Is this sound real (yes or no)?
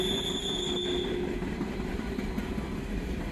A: yes